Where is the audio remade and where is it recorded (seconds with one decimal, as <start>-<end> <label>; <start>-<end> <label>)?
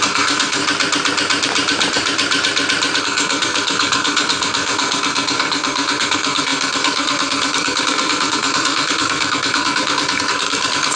0.0-0.6 remade; 0.6-3.0 recorded; 3.0-11.0 remade